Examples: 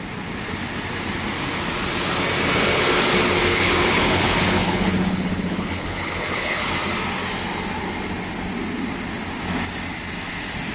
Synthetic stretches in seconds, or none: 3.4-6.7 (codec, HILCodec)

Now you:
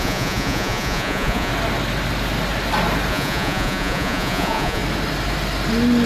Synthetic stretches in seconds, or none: 0.0-1.5 (vocoder, Vocos); 3.1-4.8